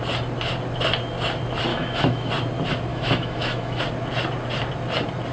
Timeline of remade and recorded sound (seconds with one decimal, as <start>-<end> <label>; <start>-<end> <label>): 0.0-1.7 recorded; 1.7-2.3 remade; 2.3-2.9 recorded; 2.9-3.8 remade; 3.8-5.3 recorded